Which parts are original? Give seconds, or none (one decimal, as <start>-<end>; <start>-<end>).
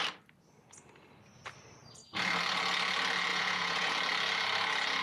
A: 0.0-3.3; 3.9-5.0